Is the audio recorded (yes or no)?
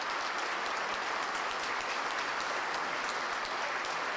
yes